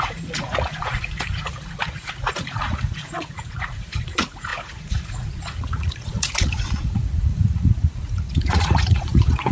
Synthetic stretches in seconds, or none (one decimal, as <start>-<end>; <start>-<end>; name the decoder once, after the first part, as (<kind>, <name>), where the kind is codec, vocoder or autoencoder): 0.0-9.5 (vocoder, Vocos)